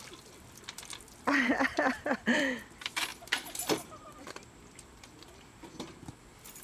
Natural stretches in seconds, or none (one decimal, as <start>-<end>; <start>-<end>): none